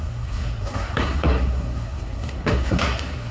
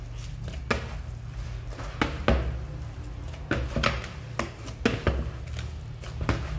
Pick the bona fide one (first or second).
second